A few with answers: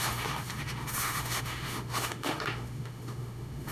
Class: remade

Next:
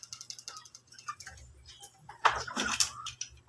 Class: recorded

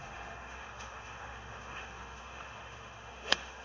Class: remade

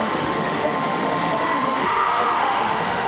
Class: remade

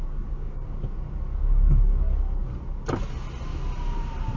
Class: recorded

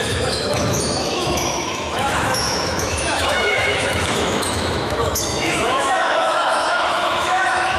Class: remade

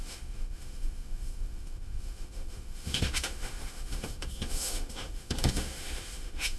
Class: remade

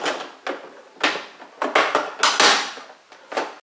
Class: recorded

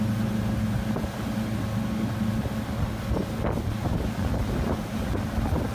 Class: recorded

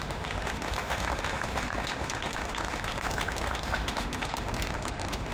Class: remade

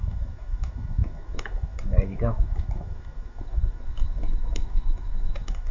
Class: remade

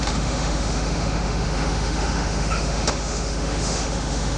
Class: remade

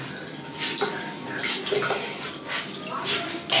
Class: recorded